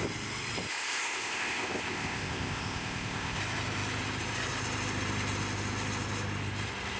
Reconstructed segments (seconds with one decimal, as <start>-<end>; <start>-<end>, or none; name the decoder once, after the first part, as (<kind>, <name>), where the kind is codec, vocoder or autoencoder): 0.7-3.4 (codec, ZipCodec)